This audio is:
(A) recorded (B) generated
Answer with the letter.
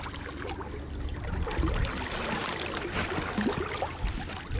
A